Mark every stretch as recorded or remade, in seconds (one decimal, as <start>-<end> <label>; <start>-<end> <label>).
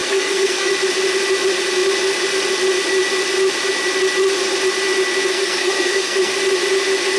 0.0-0.7 remade; 0.7-5.3 recorded; 5.3-6.3 remade; 6.3-7.2 recorded